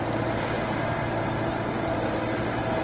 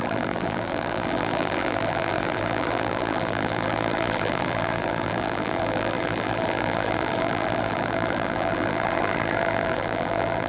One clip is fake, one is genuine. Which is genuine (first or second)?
first